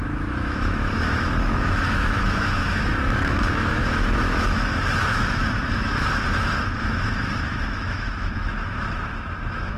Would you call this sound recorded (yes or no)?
no